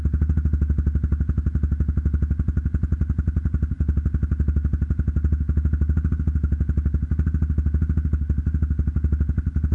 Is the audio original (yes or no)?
yes